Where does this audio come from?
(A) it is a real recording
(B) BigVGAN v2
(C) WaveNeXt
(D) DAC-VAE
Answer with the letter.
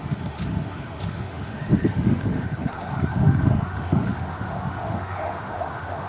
D